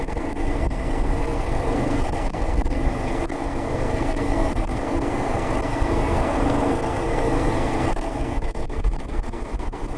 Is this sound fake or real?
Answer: fake